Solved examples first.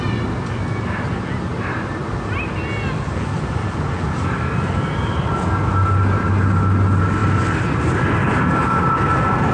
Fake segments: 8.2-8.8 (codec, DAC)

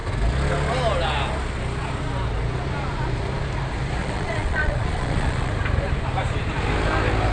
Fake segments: 4.0-5.5 (vocoder, Vocos)